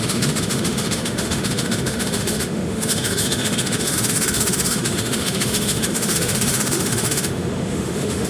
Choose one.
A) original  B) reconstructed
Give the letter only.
B